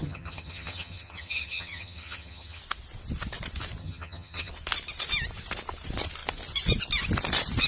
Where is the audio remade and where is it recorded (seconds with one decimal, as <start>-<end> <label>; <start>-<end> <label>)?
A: 0.0-2.6 remade; 2.6-3.8 recorded; 3.8-4.5 remade; 4.5-7.7 recorded